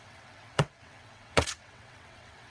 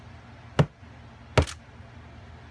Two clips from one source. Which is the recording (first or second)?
second